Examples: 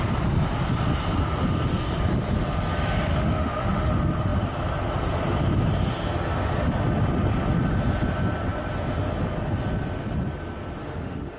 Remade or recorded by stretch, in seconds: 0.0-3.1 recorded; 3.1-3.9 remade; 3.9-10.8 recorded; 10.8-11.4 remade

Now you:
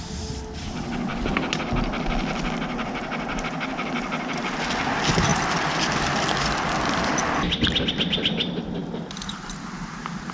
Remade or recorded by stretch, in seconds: 0.0-10.3 recorded

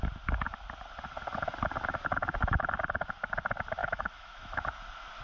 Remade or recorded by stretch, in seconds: 0.0-3.8 recorded; 3.8-4.6 remade; 4.6-5.2 recorded

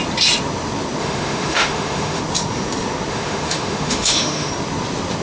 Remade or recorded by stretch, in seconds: 0.0-1.0 recorded; 1.0-2.2 remade; 2.2-3.1 recorded; 3.1-4.5 remade; 4.5-5.2 recorded

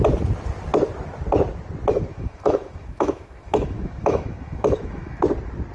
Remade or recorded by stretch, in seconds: 0.0-2.1 recorded; 2.1-5.2 remade; 5.2-5.7 recorded

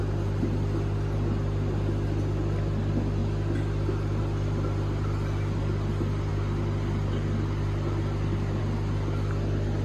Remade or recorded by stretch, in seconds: 0.0-9.8 recorded

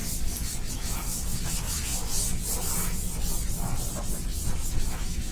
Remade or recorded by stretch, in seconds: 0.0-0.7 recorded; 0.7-1.9 remade; 1.9-4.7 recorded; 4.7-5.3 remade